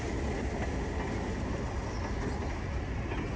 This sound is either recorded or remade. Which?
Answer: recorded